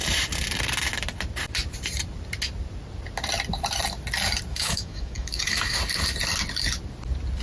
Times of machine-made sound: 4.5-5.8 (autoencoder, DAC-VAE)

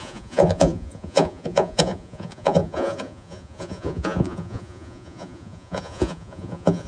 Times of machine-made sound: 0.0-6.9 (vocoder, Vocos)

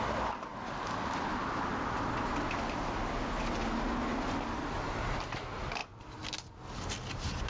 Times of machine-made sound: none